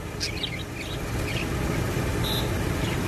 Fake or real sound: real